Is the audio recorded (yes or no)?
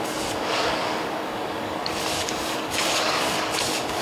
no